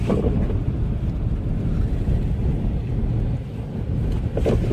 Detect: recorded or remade recorded